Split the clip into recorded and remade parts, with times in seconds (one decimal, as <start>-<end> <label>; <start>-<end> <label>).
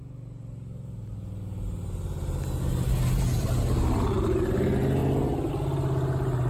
0.0-3.3 recorded; 3.3-4.5 remade; 4.5-6.5 recorded